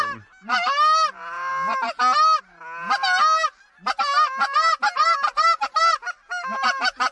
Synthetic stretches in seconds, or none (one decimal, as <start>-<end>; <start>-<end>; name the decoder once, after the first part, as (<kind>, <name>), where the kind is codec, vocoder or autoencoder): 5.0-5.8 (vocoder, BigVGAN v2)